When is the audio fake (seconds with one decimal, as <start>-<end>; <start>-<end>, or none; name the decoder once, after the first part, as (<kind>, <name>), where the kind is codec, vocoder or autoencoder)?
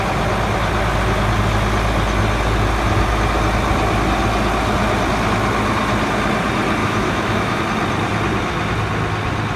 6.8-7.6 (autoencoder, DAC-VAE)